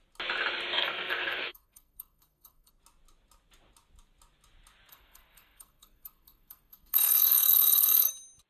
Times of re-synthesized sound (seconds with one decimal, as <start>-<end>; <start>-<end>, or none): 0.8-2.7; 4.9-8.1